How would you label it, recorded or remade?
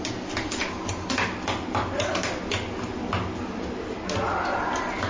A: recorded